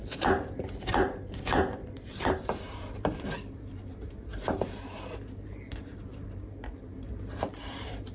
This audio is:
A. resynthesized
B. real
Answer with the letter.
A